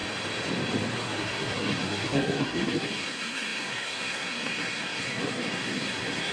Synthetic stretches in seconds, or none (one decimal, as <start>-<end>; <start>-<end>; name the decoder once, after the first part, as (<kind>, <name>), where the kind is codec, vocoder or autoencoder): 0.9-6.3 (codec, SNAC)